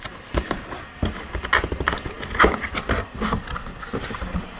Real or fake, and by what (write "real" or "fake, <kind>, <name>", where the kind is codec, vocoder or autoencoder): real